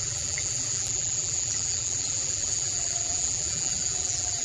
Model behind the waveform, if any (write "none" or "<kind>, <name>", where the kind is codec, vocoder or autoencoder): vocoder, BigVGAN v2